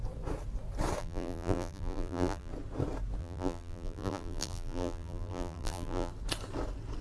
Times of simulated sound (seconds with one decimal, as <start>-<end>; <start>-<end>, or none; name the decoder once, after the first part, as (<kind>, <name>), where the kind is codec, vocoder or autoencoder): 1.0-2.5 (vocoder, BigVGAN v2); 3.2-6.1